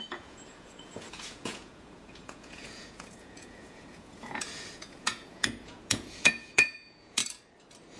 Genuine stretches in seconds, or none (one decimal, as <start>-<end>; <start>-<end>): 7.2-8.0